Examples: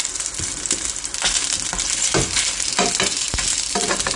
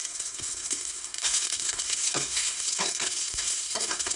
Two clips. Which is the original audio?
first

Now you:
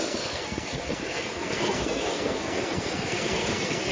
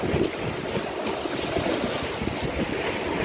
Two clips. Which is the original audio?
second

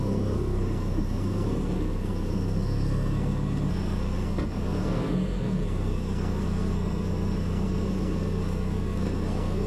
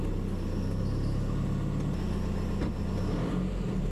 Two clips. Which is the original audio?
second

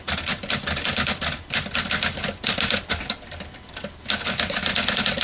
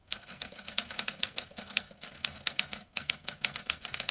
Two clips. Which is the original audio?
first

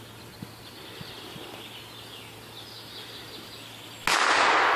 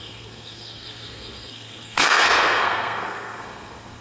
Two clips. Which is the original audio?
first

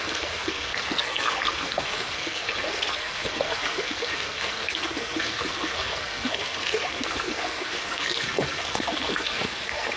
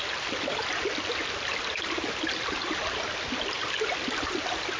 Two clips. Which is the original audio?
second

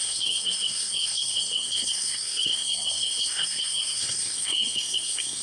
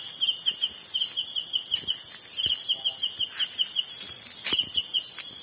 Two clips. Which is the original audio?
second